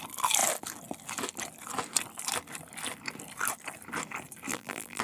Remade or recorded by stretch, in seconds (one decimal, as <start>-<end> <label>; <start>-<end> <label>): 0.0-4.5 recorded; 4.5-5.0 remade

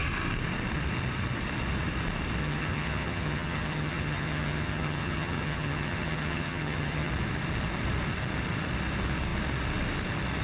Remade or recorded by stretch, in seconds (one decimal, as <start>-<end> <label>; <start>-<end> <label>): 0.0-2.4 recorded; 2.4-7.1 remade; 7.1-10.4 recorded

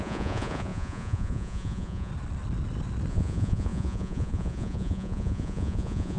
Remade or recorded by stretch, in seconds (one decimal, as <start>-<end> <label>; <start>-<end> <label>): 0.0-2.1 remade; 2.1-3.1 recorded; 3.1-6.2 remade

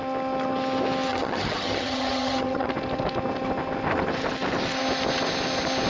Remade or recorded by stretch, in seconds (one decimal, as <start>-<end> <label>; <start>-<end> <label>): 0.0-1.1 recorded; 1.1-2.7 remade; 2.7-5.9 recorded

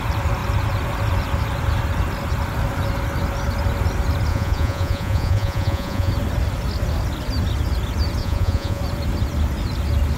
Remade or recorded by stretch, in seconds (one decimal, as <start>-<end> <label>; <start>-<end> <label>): 0.0-4.3 recorded; 4.3-6.1 remade; 6.1-8.2 recorded; 8.2-8.8 remade; 8.8-10.2 recorded

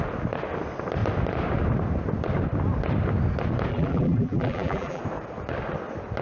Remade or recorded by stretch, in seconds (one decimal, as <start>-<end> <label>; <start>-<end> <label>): 0.0-3.7 recorded; 3.7-5.0 remade; 5.0-6.2 recorded